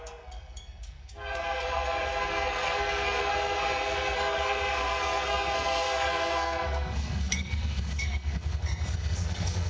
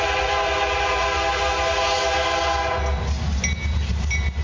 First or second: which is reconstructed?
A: first